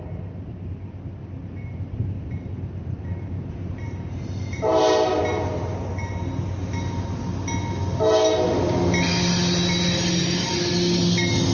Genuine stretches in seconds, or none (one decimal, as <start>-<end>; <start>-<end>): 0.0-1.2; 5.2-11.5